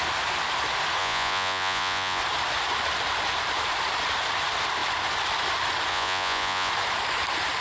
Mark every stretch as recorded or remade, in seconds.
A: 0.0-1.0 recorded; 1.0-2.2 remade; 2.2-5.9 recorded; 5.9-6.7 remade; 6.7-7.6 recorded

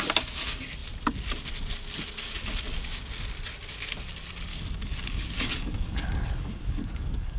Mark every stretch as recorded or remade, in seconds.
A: 0.0-4.5 recorded; 4.5-7.4 remade

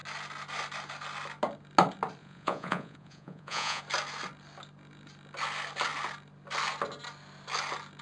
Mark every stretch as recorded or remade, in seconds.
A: 0.0-2.2 recorded; 2.2-3.8 remade; 3.8-8.0 recorded

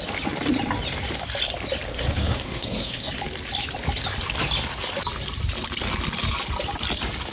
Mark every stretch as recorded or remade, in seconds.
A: 0.0-1.9 recorded; 1.9-3.1 remade; 3.1-7.3 recorded

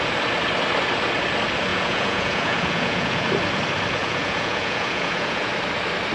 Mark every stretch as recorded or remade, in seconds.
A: 0.0-1.7 recorded; 1.7-3.3 remade; 3.3-4.0 recorded; 4.0-5.5 remade; 5.5-6.1 recorded

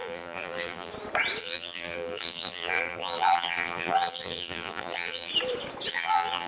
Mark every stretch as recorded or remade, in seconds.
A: 0.0-0.9 remade; 0.9-1.4 recorded; 1.4-5.3 remade; 5.3-5.9 recorded; 5.9-6.5 remade